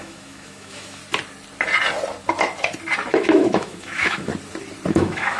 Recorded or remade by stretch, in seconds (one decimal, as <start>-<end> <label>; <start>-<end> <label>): 0.0-1.0 remade; 1.0-3.1 recorded; 3.1-4.3 remade; 4.3-4.9 recorded; 4.9-5.4 remade